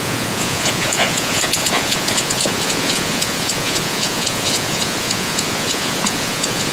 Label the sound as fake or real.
fake